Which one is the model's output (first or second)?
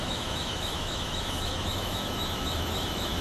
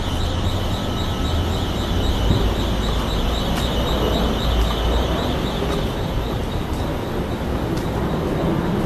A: first